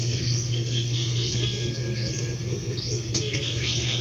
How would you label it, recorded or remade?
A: remade